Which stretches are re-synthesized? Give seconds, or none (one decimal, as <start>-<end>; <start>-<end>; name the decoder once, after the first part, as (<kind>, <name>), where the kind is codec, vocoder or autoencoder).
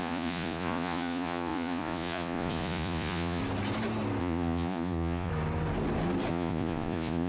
0.0-3.4 (vocoder, Vocos); 4.2-5.3; 6.3-7.3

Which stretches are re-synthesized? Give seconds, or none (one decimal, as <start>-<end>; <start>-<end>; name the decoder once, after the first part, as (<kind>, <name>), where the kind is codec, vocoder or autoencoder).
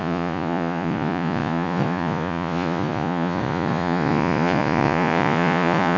0.0-6.0 (vocoder, Vocos)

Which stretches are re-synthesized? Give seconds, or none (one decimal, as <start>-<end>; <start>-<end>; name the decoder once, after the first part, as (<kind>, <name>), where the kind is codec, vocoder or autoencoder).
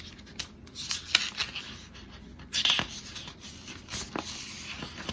none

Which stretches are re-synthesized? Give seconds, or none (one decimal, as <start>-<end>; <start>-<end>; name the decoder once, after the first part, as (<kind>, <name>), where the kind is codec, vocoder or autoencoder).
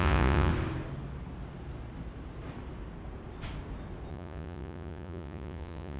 0.0-0.5 (vocoder, Vocos); 4.1-6.0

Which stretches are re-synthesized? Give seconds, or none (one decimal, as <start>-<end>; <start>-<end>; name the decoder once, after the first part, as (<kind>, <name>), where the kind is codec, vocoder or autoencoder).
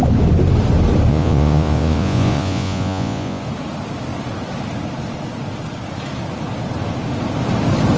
1.1-3.4 (vocoder, Vocos)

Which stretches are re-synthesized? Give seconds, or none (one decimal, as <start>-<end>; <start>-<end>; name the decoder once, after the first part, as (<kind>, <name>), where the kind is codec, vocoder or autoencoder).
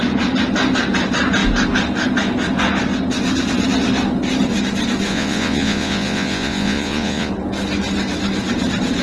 5.1-7.3 (vocoder, Vocos)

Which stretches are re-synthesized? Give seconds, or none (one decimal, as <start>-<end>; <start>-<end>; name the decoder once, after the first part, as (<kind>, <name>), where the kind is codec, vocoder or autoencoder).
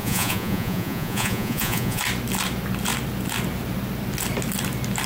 0.0-2.0 (vocoder, Vocos)